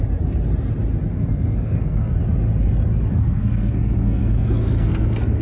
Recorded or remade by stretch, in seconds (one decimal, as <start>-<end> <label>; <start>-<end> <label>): 0.0-1.1 recorded; 1.1-2.2 remade; 2.2-3.1 recorded; 3.1-5.4 remade